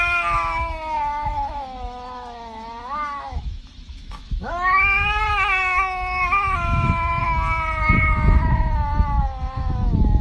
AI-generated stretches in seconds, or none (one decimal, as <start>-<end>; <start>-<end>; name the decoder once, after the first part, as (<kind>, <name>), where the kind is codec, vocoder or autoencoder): 0.0-7.2 (autoencoder, DAC-VAE); 9.2-10.2